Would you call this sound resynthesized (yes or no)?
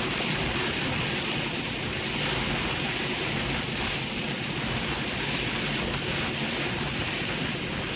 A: no